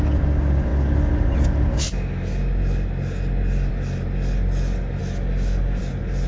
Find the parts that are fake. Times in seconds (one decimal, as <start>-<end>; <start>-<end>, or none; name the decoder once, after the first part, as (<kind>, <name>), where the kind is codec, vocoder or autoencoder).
5.0-5.8 (autoencoder, DAC-VAE)